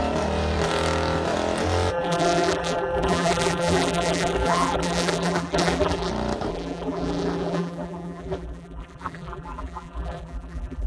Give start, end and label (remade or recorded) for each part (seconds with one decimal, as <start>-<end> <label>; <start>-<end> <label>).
0.0-1.9 recorded; 1.9-6.1 remade; 6.1-6.5 recorded; 6.5-10.9 remade